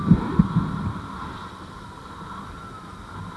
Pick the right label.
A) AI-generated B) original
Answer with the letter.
B